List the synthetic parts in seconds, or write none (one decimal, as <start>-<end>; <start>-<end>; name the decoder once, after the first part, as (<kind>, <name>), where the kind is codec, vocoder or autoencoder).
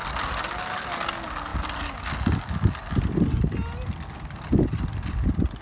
none